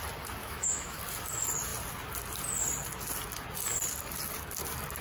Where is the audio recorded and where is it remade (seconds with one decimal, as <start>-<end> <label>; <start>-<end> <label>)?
0.0-0.4 recorded; 0.4-1.0 remade; 1.0-5.0 recorded